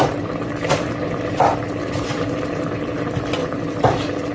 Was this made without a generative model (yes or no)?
yes